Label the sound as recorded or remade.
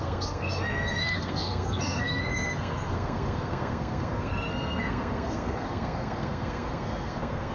remade